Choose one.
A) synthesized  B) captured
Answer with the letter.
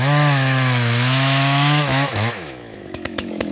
A